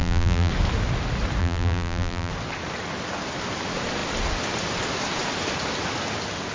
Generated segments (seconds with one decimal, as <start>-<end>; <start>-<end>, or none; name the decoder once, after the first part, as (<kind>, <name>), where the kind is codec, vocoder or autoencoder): 0.0-0.5 (vocoder, BigVGAN v2); 1.4-2.3